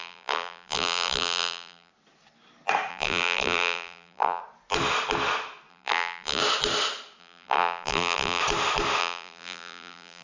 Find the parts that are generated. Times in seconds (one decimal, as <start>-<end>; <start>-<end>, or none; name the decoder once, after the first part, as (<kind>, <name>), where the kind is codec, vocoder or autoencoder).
0.0-1.9 (vocoder, BigVGAN v2); 2.9-4.4; 5.7-6.4; 7.2-8.4; 9.0-10.2